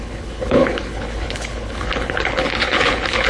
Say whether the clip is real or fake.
fake